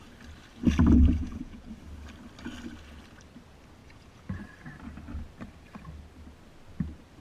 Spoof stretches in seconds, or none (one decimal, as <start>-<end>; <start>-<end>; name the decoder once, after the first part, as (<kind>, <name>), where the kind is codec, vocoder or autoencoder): 1.2-1.7 (vocoder, Vocos); 3.8-4.4